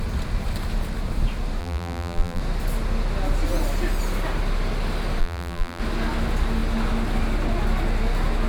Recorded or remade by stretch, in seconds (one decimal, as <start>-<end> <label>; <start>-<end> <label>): 0.0-1.6 recorded; 1.6-2.4 remade; 2.4-5.2 recorded; 5.2-5.8 remade; 5.8-8.5 recorded